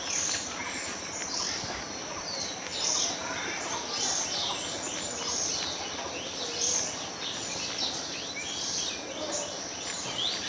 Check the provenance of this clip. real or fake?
real